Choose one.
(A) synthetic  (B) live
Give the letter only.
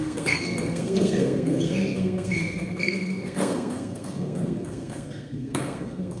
A